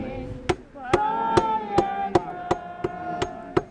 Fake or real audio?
real